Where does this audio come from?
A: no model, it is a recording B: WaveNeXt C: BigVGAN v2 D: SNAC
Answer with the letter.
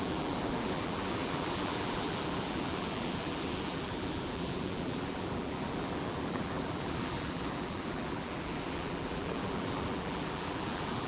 C